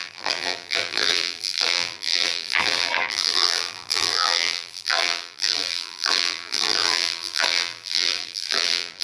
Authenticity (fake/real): fake